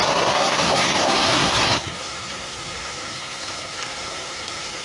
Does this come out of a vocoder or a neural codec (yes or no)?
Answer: yes